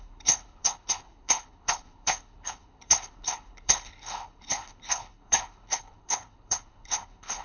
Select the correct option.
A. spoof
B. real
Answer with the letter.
A